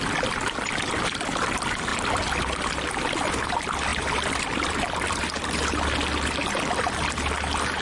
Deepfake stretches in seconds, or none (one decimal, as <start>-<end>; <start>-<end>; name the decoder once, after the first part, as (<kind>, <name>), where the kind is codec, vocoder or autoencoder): 1.9-2.8 (vocoder, BigVGAN v2); 3.9-4.7